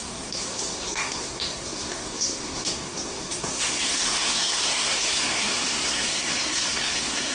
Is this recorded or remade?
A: remade